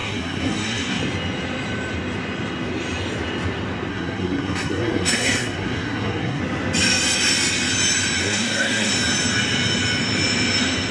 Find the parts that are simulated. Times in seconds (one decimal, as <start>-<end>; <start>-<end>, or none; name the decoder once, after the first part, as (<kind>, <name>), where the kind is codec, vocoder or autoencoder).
0.0-1.0 (codec, SNAC); 3.9-6.4; 8.2-8.9